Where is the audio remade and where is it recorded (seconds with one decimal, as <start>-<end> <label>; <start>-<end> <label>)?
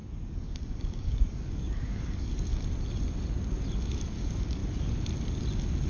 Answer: 0.0-2.5 remade; 2.5-3.9 recorded; 3.9-4.6 remade; 4.6-5.9 recorded